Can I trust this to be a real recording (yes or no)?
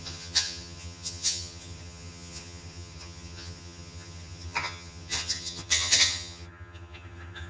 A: no